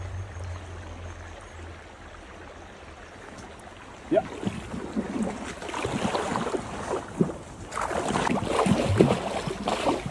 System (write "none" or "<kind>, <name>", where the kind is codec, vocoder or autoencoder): none